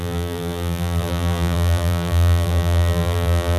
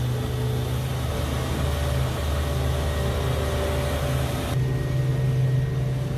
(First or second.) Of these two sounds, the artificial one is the first